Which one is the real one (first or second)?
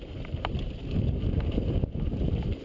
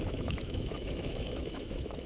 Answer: first